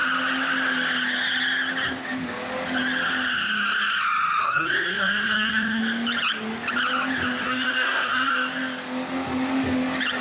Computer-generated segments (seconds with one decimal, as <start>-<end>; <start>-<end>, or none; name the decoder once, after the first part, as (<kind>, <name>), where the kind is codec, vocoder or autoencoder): 4.4-5.8 (codec, SNAC); 7.4-8.3